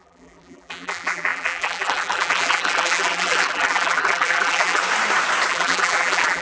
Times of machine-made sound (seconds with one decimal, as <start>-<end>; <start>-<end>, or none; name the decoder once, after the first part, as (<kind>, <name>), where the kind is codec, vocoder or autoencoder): 0.0-4.8 (vocoder, BigVGAN v2); 5.5-6.4